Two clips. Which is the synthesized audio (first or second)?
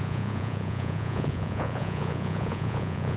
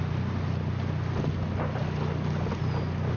first